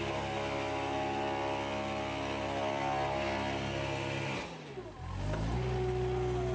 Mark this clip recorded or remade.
recorded